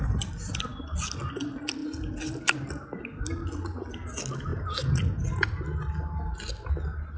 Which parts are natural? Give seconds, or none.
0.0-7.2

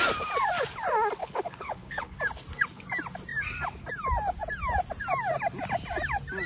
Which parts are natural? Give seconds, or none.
0.0-1.2; 2.2-6.5

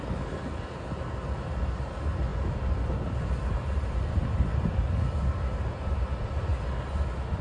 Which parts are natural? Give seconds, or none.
0.0-7.4

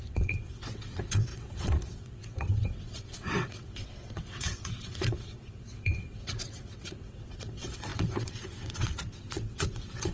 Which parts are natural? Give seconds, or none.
none

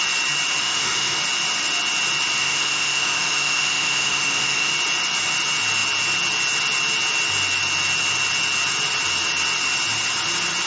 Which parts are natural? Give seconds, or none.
0.0-0.6; 1.2-2.4; 4.7-10.7

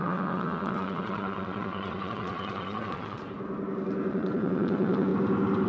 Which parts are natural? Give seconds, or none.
3.2-4.1; 5.1-5.7

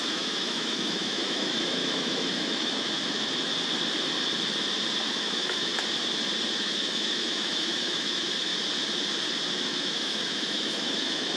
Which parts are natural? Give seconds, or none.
3.5-5.1; 5.7-6.6; 8.5-9.5

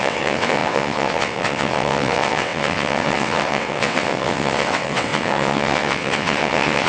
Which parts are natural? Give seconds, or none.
none